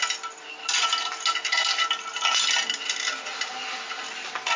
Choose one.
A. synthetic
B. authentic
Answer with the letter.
B